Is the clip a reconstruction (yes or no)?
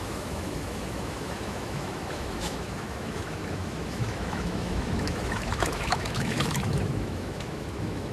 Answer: yes